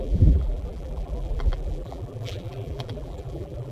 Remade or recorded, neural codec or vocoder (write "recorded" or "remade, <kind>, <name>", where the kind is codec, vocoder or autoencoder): remade, vocoder, BigVGAN v2